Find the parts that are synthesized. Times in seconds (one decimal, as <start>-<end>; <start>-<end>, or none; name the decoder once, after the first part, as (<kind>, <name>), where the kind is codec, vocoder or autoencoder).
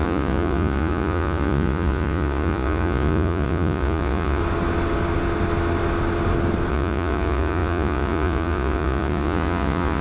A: 0.0-4.4 (vocoder, Vocos); 6.7-10.0